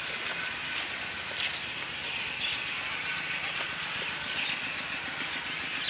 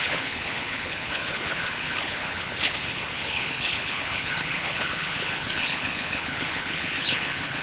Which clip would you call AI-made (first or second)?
second